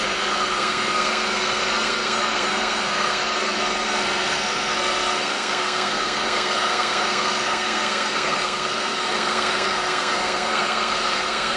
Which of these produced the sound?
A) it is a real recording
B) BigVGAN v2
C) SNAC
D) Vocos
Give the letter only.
C